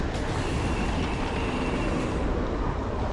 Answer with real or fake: real